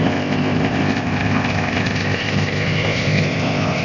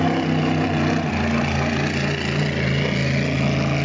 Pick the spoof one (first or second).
first